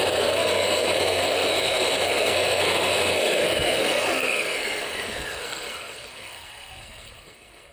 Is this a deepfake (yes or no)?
yes